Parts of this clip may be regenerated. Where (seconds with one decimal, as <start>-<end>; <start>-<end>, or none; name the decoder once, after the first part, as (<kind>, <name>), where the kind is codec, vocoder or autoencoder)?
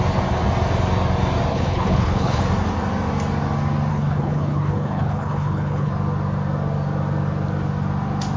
1.5-2.4 (codec, HILCodec); 3.9-5.9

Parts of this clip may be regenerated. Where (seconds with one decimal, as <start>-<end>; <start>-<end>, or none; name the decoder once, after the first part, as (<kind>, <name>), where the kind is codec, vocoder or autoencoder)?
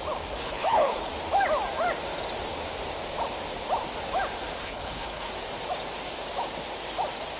0.4-1.1 (codec, HILCodec); 4.6-5.3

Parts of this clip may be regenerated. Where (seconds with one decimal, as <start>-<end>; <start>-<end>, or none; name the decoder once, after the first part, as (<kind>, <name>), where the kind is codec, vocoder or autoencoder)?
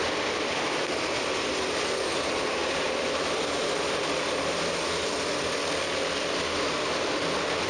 none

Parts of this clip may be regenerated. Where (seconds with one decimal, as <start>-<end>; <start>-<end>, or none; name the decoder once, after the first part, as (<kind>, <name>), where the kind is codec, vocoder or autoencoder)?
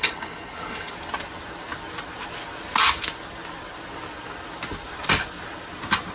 0.0-0.9 (codec, HILCodec)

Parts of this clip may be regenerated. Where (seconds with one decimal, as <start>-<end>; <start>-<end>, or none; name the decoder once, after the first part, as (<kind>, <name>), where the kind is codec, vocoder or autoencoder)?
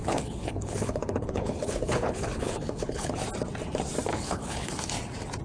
0.0-3.2 (codec, HILCodec); 4.1-4.7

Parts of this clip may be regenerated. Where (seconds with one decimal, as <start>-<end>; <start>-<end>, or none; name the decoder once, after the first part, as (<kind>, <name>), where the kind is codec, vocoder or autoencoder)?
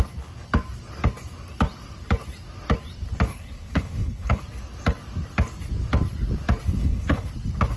3.3-4.4 (codec, HILCodec); 6.8-7.3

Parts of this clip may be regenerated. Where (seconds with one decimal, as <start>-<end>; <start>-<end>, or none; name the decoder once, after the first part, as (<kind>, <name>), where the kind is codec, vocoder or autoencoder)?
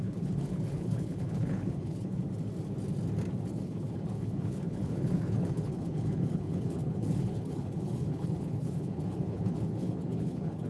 0.0-2.2 (codec, HILCodec); 3.5-10.7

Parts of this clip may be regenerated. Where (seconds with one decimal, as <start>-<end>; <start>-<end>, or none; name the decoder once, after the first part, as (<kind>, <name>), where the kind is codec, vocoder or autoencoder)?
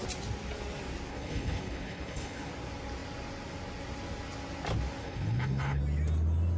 1.1-2.5 (codec, HILCodec); 5.0-5.8